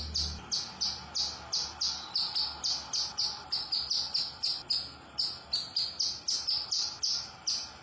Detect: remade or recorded recorded